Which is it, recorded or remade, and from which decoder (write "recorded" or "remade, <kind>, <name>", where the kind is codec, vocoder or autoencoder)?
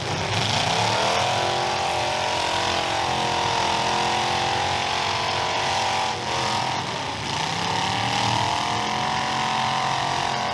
recorded